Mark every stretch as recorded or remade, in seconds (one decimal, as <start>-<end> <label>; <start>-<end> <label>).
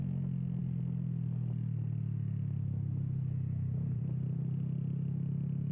0.0-5.7 recorded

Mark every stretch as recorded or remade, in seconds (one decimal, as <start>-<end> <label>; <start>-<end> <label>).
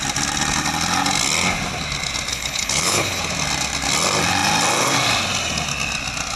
0.0-2.3 recorded; 2.3-3.2 remade; 3.2-6.4 recorded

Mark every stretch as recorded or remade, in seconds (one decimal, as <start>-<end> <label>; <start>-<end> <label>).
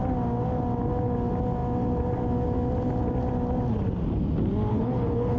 0.0-4.7 recorded; 4.7-5.4 remade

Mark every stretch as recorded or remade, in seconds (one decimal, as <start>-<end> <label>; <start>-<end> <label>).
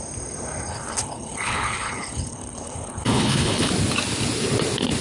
0.0-0.7 recorded; 0.7-3.7 remade; 3.7-5.0 recorded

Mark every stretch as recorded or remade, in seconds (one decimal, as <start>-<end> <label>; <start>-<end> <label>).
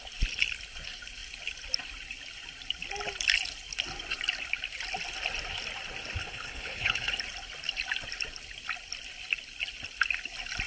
0.0-6.2 recorded; 6.2-7.1 remade; 7.1-10.7 recorded